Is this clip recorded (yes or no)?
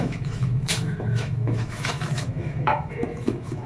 no